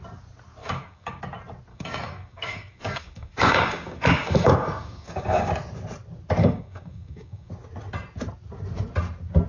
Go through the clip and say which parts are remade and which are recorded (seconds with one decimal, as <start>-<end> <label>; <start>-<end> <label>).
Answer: 0.0-0.6 recorded; 0.6-1.2 remade; 1.2-1.7 recorded; 1.7-5.5 remade; 5.5-6.4 recorded; 6.4-7.5 remade; 7.5-9.5 recorded